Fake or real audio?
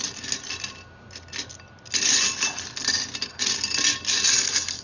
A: real